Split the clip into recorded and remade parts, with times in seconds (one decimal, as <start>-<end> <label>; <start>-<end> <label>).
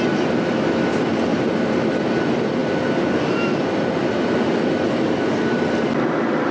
0.0-6.5 recorded